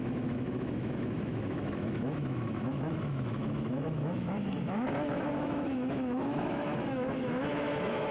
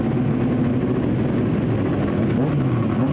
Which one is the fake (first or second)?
first